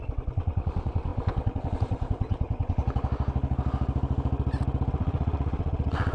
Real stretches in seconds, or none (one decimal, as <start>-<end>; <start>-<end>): 2.8-4.9